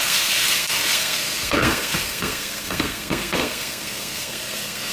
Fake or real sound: fake